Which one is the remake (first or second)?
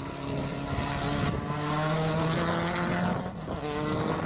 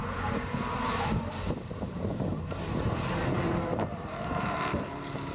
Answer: second